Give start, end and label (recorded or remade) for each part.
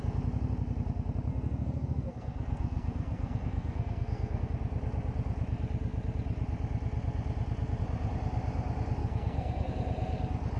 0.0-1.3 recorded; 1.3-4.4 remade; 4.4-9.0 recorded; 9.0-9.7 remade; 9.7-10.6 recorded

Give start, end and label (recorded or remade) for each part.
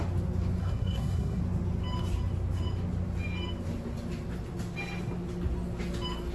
0.0-0.6 recorded; 0.6-1.4 remade; 1.4-6.3 recorded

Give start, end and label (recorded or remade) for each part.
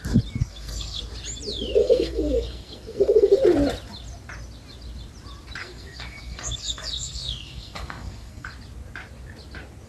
0.0-0.4 recorded; 0.4-1.0 remade; 1.0-1.8 recorded; 1.8-3.4 remade; 3.4-5.6 recorded; 5.6-8.5 remade; 8.5-9.9 recorded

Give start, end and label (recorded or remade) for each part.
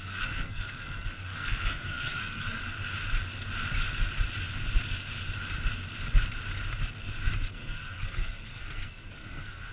0.0-2.6 remade; 2.6-7.5 recorded; 7.5-9.7 remade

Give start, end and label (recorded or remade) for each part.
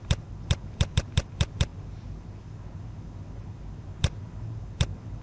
0.0-5.2 recorded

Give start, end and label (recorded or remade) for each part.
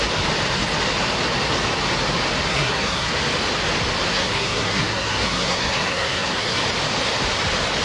0.0-2.5 recorded; 2.5-3.1 remade; 3.1-4.1 recorded; 4.1-6.6 remade; 6.6-7.8 recorded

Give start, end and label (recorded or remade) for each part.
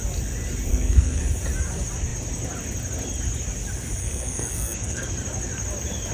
0.0-0.7 recorded; 0.7-1.2 remade; 1.2-4.0 recorded; 4.0-5.1 remade; 5.1-6.1 recorded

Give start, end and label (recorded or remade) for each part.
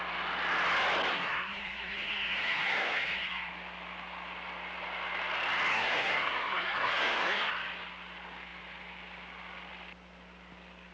0.0-1.1 recorded; 1.1-3.5 remade; 3.5-5.7 recorded; 5.7-7.5 remade; 7.5-10.9 recorded